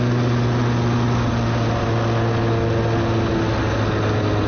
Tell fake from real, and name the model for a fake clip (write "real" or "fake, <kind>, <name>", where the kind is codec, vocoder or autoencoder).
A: real